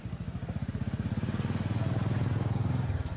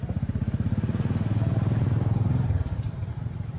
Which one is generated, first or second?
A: second